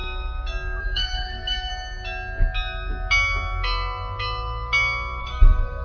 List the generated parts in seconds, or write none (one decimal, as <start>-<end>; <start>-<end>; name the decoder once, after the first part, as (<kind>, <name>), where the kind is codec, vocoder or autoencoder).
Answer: 0.8-1.7 (codec, SNAC); 5.2-5.8